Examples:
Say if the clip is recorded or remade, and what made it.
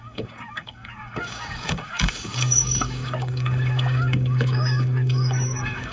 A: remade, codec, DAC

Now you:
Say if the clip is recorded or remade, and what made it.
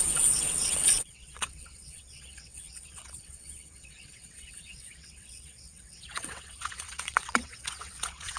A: remade, vocoder, WaveNeXt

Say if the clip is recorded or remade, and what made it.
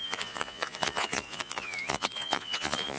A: remade, vocoder, Vocos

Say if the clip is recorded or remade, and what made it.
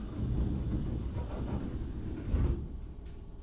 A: recorded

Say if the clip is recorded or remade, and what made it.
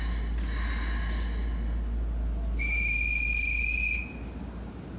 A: recorded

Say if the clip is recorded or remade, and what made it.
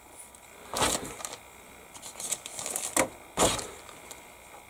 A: recorded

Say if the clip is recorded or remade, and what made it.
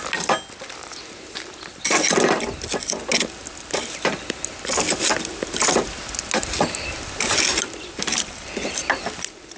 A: recorded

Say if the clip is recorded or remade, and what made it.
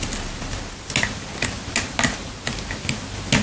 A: recorded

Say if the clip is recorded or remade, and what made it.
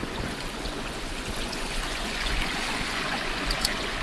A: remade, vocoder, Vocos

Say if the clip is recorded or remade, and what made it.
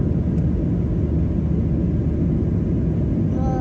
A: recorded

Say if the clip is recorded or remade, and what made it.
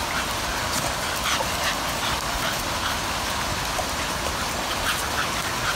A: recorded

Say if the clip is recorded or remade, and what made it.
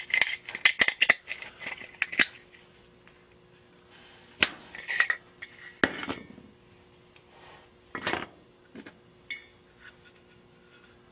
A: recorded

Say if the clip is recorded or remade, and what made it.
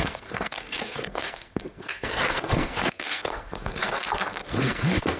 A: remade, codec, SNAC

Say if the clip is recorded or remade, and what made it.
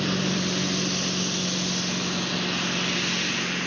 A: recorded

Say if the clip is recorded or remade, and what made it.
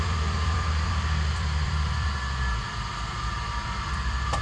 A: remade, vocoder, BigVGAN v2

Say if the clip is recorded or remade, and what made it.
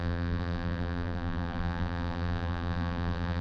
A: remade, vocoder, BigVGAN v2